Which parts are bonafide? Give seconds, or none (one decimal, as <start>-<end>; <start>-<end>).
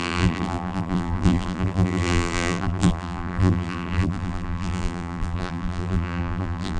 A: none